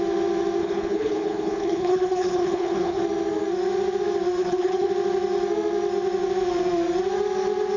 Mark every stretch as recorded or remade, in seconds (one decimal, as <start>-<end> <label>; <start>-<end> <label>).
0.0-0.6 recorded; 0.6-3.0 remade; 3.0-4.4 recorded; 4.4-4.9 remade; 4.9-7.8 recorded